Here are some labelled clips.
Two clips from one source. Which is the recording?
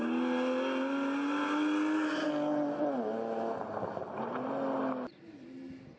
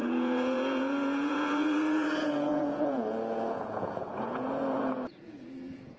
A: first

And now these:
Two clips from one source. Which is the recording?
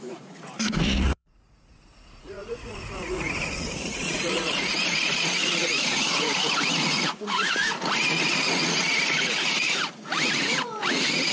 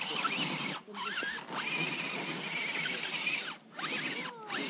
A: second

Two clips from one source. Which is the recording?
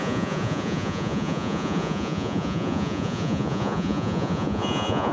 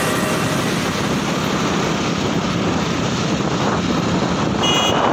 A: second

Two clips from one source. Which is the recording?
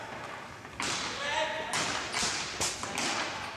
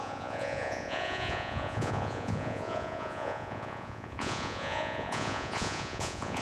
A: first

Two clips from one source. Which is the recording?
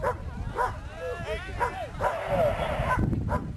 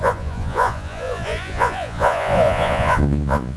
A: first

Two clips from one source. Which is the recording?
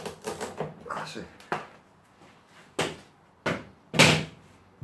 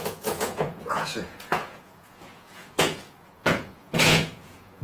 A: first